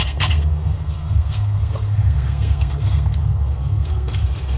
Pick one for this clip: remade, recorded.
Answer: remade